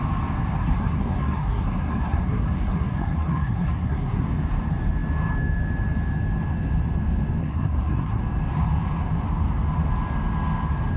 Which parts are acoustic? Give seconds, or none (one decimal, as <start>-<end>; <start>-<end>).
0.0-0.6; 4.2-7.4; 8.2-11.0